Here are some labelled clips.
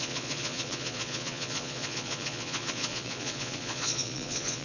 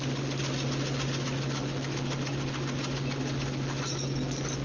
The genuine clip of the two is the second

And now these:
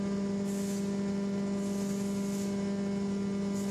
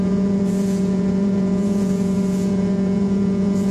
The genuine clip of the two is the first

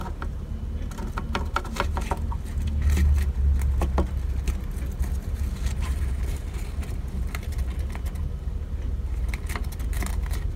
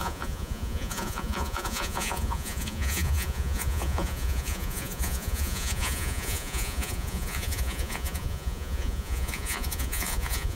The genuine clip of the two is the first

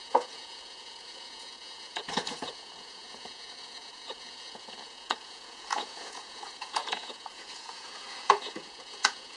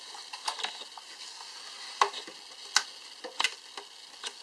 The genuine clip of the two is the second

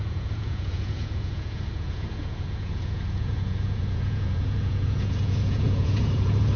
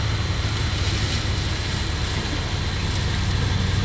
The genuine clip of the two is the second